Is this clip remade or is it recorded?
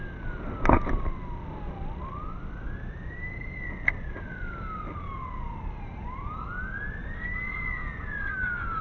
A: recorded